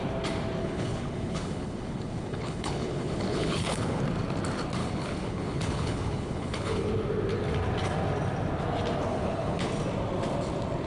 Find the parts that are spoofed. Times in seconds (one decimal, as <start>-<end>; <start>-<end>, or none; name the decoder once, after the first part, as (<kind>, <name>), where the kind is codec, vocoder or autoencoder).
0.6-4.0 (codec, HILCodec); 4.8-6.9; 9.1-9.7